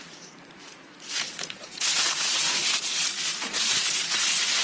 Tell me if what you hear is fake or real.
fake